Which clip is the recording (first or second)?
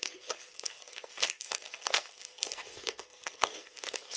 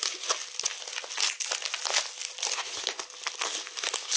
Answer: second